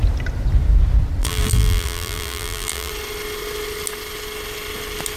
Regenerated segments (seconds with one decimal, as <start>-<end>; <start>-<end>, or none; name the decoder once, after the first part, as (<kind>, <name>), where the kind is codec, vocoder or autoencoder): 1.2-2.9 (vocoder, BigVGAN v2)